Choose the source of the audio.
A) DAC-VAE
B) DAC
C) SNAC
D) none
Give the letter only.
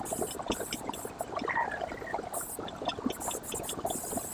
D